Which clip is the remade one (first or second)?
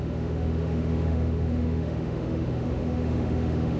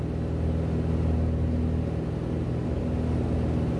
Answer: first